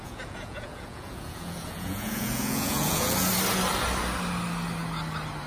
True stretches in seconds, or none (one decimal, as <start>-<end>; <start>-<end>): 3.3-5.5